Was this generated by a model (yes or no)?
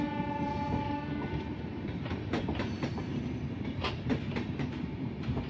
yes